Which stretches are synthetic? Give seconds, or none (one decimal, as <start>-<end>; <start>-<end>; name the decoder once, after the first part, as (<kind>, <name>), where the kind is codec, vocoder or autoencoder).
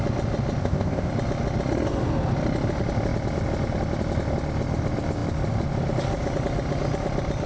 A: 0.6-1.1 (codec, ZipCodec)